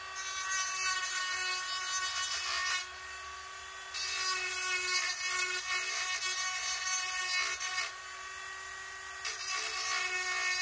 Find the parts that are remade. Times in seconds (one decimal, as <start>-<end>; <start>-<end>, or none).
none